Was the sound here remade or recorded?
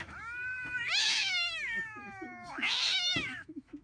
remade